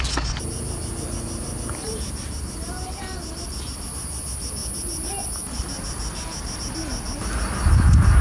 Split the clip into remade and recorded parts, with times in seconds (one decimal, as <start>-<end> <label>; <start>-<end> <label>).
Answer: 0.0-8.2 recorded